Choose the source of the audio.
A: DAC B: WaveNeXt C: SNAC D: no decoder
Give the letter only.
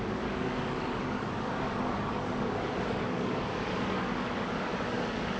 A